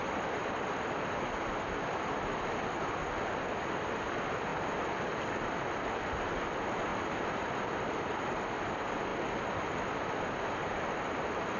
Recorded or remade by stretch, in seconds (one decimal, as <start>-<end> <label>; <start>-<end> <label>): 0.0-2.7 remade; 2.7-6.9 recorded; 6.9-8.4 remade; 8.4-11.6 recorded